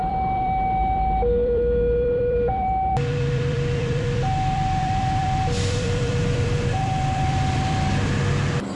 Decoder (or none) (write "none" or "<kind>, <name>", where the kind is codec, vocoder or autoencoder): vocoder, BigVGAN v2